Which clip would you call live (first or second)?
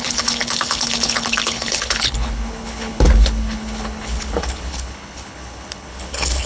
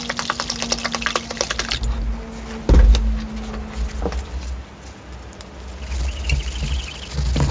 second